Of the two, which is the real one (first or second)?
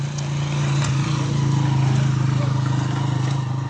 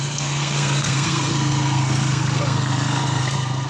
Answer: first